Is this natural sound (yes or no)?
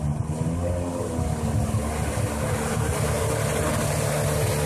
yes